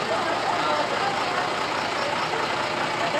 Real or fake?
real